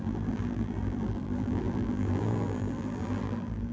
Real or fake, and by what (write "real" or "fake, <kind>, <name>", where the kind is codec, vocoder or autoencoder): fake, vocoder, BigVGAN v2